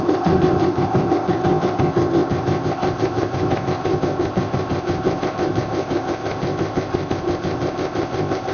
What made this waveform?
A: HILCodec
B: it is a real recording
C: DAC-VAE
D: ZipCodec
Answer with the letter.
D